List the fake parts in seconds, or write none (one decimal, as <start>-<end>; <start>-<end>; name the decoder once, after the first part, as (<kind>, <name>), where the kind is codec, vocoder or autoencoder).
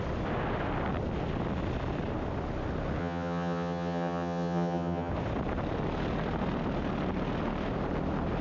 3.0-5.1 (vocoder, HiFi-GAN)